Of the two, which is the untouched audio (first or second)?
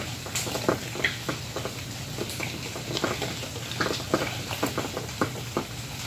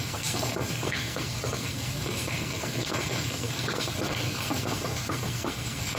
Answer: first